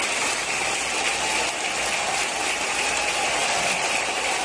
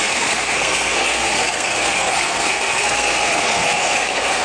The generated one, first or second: second